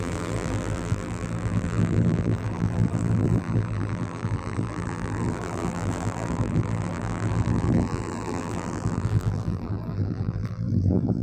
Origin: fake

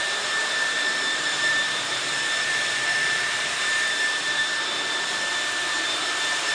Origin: fake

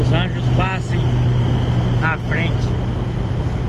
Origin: real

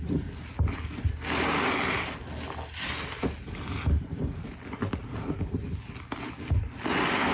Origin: real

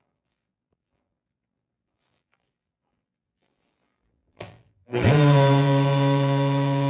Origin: fake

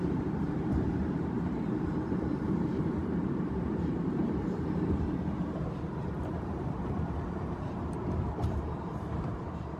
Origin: fake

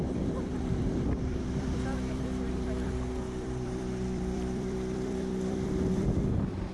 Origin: fake